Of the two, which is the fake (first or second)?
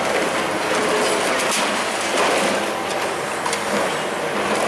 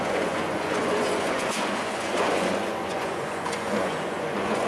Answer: second